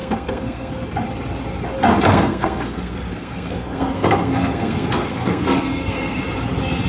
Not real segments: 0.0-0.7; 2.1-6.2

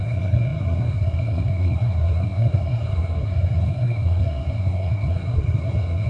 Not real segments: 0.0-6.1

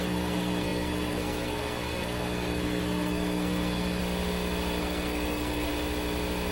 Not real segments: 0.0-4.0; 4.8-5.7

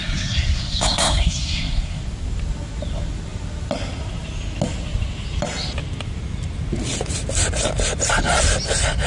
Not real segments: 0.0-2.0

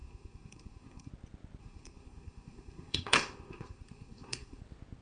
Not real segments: 0.0-1.1; 1.6-4.6

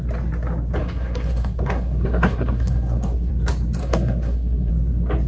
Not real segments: 0.8-3.3; 3.8-4.7

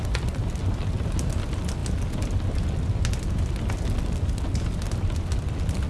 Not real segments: none